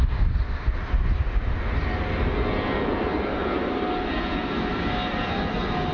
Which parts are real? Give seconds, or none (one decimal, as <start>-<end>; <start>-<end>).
0.0-5.9